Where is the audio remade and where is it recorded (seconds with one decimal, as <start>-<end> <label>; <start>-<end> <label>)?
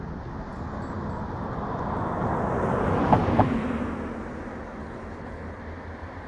0.0-4.8 recorded; 4.8-5.6 remade; 5.6-6.3 recorded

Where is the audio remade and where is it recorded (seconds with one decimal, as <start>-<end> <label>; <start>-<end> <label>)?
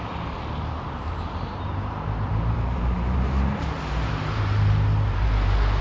0.0-1.0 recorded; 1.0-4.4 remade; 4.4-5.8 recorded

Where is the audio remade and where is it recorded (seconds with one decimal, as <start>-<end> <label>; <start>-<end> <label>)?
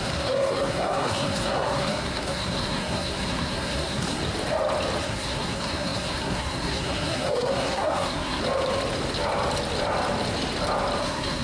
0.0-4.2 remade; 4.2-5.0 recorded; 5.0-8.4 remade; 8.4-11.0 recorded; 11.0-11.4 remade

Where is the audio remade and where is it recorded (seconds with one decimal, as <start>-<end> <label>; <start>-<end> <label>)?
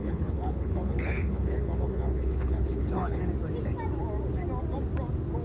0.0-3.2 remade; 3.2-5.4 recorded